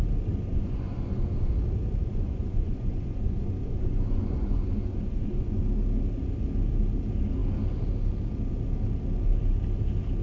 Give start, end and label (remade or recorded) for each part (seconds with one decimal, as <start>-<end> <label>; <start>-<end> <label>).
0.0-0.5 recorded; 0.5-1.5 remade; 1.5-2.0 recorded; 2.0-5.6 remade; 5.6-10.2 recorded